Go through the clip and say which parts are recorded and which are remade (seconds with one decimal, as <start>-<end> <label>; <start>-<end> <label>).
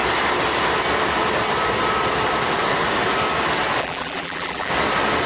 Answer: 0.0-3.8 recorded; 3.8-4.7 remade; 4.7-5.3 recorded